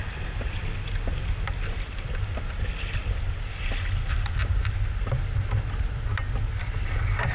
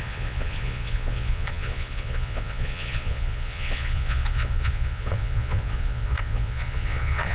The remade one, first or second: second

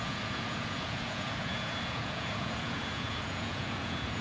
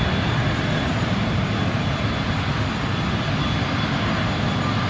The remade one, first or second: first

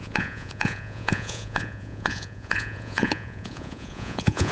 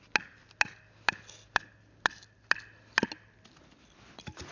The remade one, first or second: first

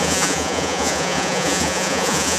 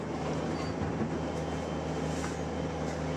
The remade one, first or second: first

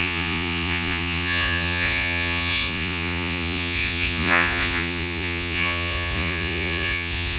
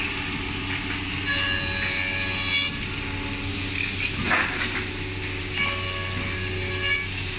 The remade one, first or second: first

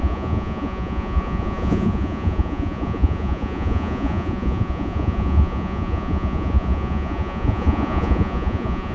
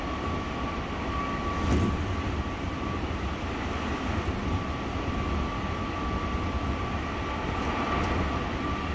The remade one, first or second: first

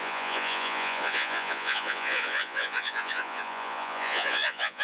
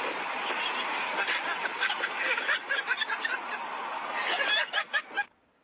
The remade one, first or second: first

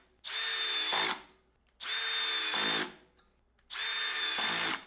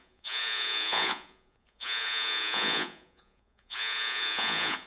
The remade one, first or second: second